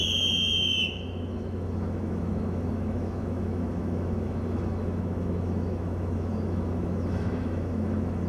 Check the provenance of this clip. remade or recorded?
remade